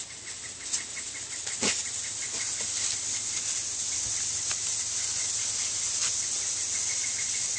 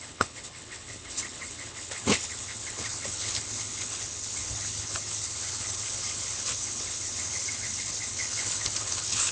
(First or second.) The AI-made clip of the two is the second